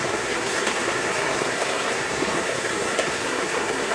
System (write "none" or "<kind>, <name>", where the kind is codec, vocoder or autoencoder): codec, SNAC